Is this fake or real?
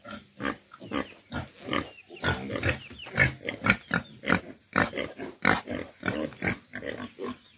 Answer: real